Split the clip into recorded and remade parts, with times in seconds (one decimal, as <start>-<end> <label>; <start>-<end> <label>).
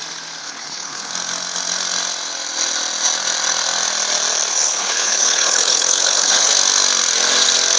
0.0-0.4 recorded; 0.4-1.1 remade; 1.1-4.5 recorded; 4.5-6.5 remade; 6.5-7.8 recorded